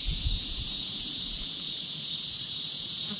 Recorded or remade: remade